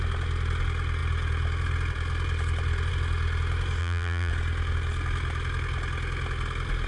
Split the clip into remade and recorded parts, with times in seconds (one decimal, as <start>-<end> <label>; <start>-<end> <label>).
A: 0.0-3.8 recorded; 3.8-4.3 remade; 4.3-6.9 recorded